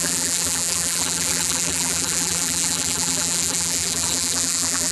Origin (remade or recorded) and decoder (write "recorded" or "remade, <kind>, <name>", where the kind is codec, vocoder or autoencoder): remade, vocoder, BigVGAN v2